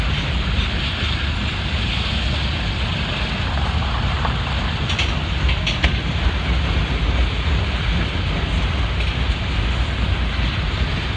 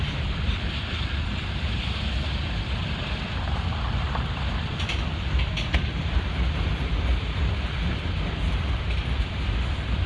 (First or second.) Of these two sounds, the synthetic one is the second